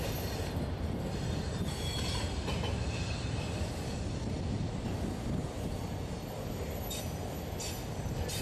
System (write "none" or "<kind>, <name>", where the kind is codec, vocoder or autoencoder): none